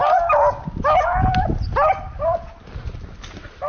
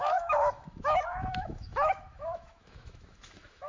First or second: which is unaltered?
first